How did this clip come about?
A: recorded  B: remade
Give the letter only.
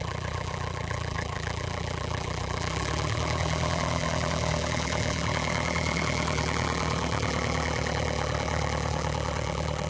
B